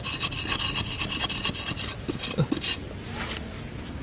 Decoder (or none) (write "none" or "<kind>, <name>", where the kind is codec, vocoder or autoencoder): none